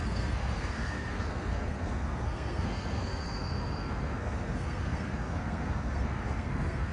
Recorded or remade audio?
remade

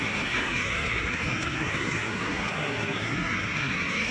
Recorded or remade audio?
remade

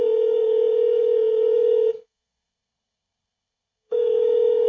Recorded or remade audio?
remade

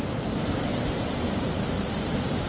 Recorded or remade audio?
recorded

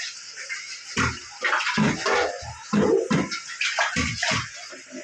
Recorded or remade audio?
recorded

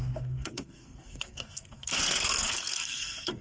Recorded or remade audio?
remade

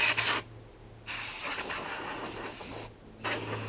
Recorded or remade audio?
recorded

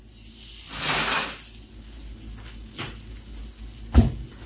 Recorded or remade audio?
recorded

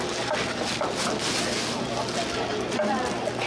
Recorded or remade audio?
recorded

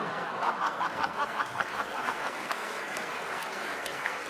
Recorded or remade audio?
remade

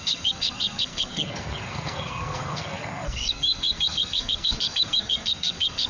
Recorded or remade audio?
remade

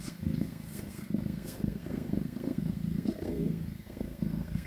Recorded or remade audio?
remade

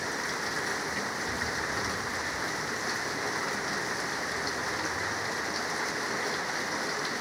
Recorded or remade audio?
recorded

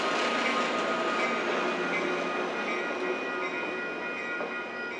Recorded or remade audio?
recorded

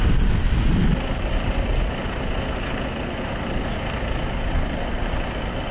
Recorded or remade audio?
recorded